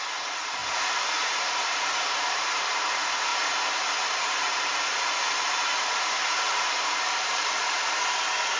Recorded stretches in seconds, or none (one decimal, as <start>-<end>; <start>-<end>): 0.0-0.6; 2.8-3.3; 8.1-8.6